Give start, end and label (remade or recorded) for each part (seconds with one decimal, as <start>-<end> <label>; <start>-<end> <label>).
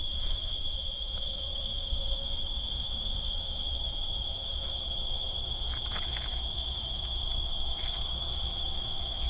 0.0-9.3 remade